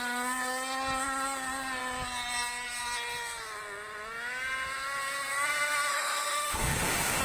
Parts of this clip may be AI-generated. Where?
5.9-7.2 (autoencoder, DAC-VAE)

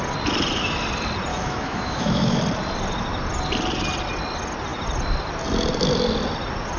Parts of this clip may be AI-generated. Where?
1.3-2.4 (autoencoder, DAC-VAE)